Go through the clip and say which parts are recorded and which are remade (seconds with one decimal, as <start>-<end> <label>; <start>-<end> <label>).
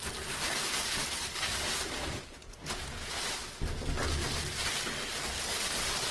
0.0-2.4 recorded; 2.4-3.2 remade; 3.2-6.1 recorded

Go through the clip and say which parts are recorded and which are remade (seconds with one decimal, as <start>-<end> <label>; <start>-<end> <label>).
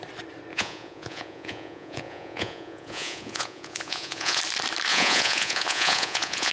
0.0-0.5 recorded; 0.5-4.4 remade; 4.4-4.9 recorded; 4.9-6.5 remade